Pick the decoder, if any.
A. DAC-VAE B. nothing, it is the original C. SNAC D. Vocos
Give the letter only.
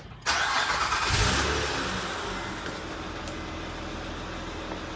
B